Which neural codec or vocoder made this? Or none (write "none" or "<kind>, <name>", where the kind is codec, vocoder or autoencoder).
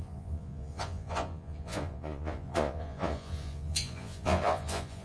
vocoder, Vocos